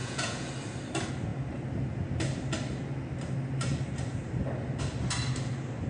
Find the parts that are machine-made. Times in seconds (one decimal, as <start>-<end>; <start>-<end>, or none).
0.0-0.5